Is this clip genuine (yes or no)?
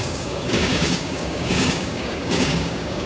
no